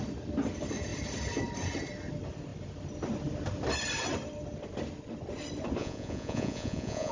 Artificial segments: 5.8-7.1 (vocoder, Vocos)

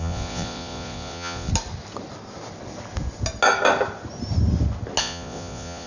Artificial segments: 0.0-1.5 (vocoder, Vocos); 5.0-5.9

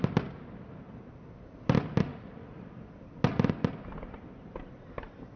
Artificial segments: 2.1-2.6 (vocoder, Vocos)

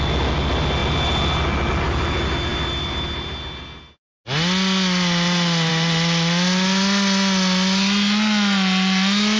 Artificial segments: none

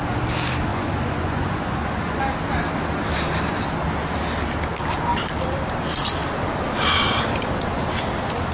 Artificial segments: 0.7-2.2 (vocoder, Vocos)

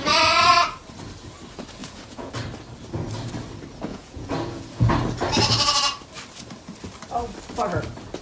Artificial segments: 1.8-2.3 (vocoder, Vocos); 3.9-4.9

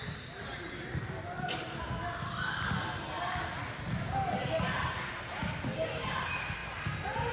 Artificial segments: none

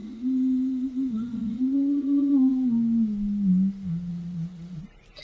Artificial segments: 0.0-2.5 (vocoder, Vocos); 4.1-4.8